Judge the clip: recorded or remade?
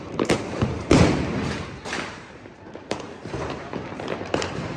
remade